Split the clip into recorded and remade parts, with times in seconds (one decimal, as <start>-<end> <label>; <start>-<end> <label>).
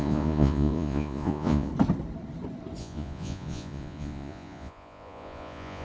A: 0.0-1.7 remade; 1.7-2.8 recorded; 2.8-5.8 remade